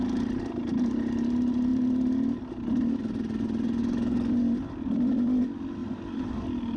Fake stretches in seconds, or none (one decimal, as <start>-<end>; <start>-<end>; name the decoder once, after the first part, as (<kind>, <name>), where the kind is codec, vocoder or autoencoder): 3.8-4.3 (codec, DAC)